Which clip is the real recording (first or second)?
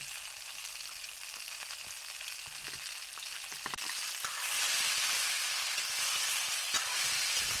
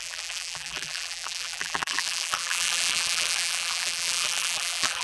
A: first